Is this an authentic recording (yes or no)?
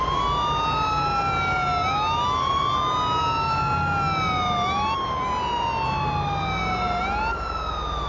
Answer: yes